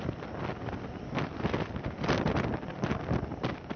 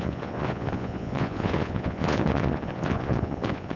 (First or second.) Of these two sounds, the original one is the first